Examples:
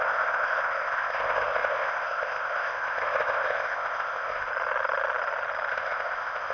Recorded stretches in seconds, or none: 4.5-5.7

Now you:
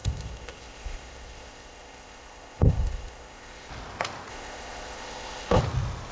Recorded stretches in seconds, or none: 3.7-4.3; 5.6-6.1

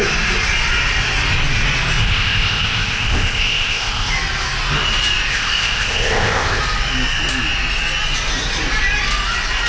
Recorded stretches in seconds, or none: 0.0-2.0; 4.1-5.3; 6.6-9.7

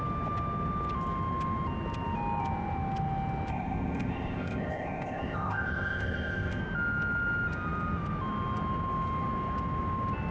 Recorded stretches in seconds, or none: 0.0-3.5; 6.6-10.3